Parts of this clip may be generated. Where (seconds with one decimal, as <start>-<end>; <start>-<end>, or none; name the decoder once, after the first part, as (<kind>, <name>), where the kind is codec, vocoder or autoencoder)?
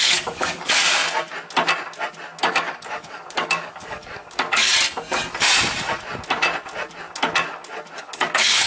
0.0-1.0 (codec, DAC); 2.4-4.7; 8.0-8.7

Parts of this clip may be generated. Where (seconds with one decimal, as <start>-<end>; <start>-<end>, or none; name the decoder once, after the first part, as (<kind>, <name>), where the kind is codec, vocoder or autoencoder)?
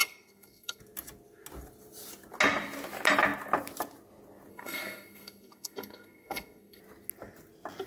0.0-0.8 (codec, SNAC); 4.5-6.8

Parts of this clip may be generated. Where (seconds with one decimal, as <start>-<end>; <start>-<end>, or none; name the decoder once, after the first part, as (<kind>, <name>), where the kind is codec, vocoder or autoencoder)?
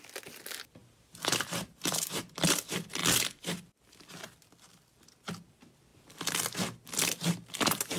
0.8-2.2 (vocoder, BigVGAN v2)